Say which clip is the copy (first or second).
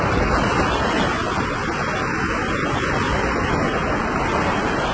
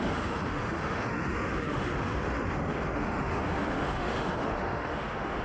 second